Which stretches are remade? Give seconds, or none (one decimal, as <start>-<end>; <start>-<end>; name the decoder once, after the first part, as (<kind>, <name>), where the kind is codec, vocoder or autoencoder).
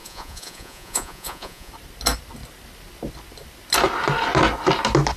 0.0-1.7 (vocoder, Vocos)